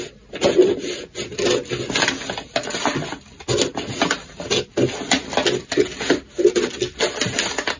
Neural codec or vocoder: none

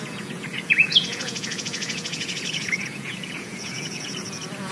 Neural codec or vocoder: vocoder, Vocos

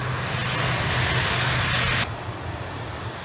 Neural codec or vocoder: none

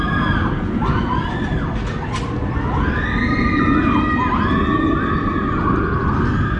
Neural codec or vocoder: none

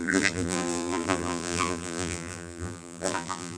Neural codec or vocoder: vocoder, BigVGAN v2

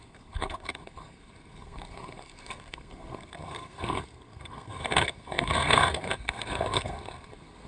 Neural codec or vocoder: codec, SNAC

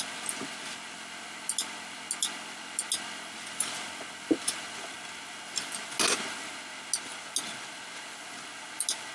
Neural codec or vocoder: none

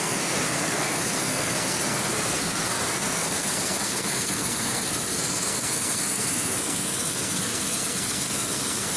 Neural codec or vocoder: codec, SNAC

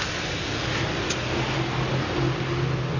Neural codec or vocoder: none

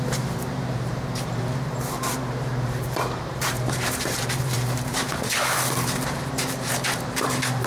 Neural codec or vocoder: vocoder, BigVGAN v2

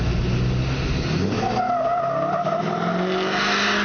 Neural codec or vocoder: none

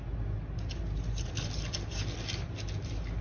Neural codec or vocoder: none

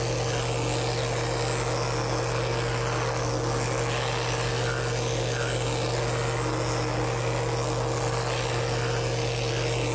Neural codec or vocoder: none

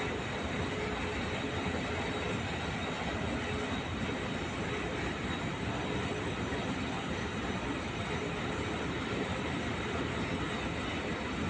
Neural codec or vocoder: none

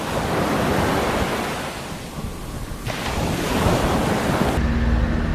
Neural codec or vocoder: none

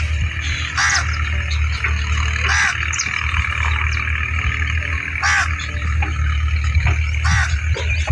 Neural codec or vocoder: none